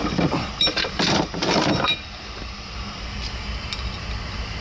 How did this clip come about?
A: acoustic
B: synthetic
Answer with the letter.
B